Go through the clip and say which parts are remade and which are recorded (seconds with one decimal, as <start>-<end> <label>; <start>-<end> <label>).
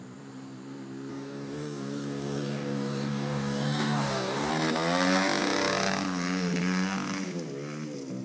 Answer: 0.0-1.1 recorded; 1.1-4.5 remade; 4.5-8.2 recorded